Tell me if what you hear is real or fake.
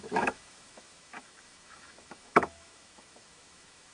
fake